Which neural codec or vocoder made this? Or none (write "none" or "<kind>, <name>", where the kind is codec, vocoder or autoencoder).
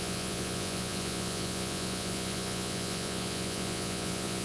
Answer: vocoder, Vocos